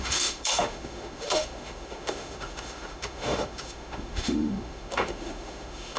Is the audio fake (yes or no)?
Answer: yes